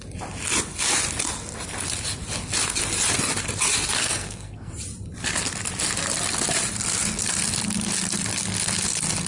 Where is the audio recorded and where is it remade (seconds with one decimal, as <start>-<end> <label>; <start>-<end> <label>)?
0.0-4.0 recorded; 4.0-4.7 remade; 4.7-9.3 recorded